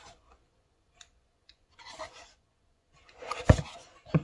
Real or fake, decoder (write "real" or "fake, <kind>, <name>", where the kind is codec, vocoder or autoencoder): fake, vocoder, Vocos